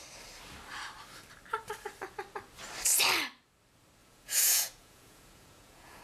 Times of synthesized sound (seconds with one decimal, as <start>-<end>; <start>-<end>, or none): 4.0-6.0